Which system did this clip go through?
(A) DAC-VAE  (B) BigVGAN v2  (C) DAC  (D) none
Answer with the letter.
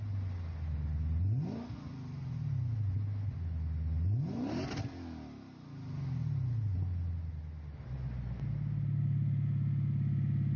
D